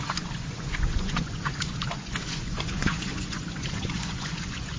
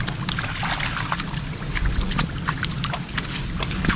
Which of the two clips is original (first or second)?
second